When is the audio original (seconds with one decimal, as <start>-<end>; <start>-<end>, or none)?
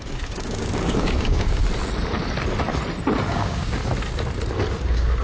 1.6-3.3; 3.8-4.8